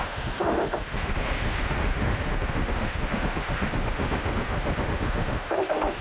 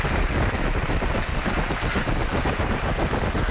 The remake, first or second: first